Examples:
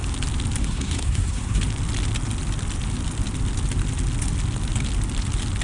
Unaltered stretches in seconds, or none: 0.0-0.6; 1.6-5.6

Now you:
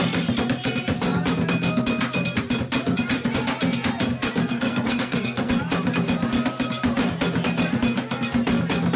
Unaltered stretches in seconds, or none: 0.0-4.4; 5.5-9.0

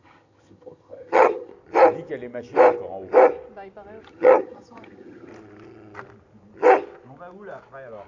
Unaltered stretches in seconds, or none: 1.5-4.0; 5.3-8.1

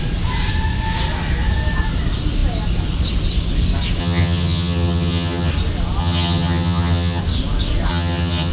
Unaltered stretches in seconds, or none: 0.0-4.0; 5.5-6.0; 7.2-7.9

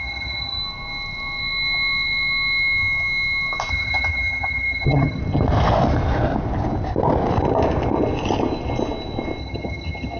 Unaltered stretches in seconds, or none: 0.6-3.7; 5.2-9.4

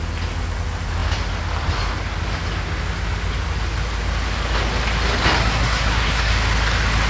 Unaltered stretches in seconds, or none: 0.0-5.4; 6.3-7.1

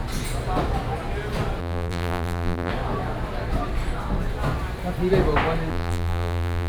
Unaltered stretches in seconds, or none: 0.0-1.6; 2.7-5.7

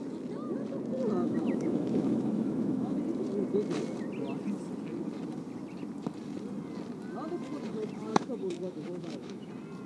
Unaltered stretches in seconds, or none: 0.0-1.2; 3.0-8.1; 9.5-9.9